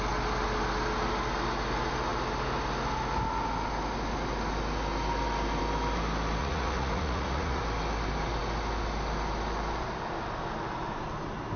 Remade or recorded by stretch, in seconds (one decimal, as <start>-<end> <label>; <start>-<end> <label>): 0.0-6.4 recorded; 6.4-7.6 remade; 7.6-11.6 recorded